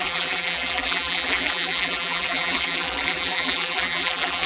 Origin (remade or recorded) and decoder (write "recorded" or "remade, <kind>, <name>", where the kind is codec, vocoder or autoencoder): remade, vocoder, BigVGAN v2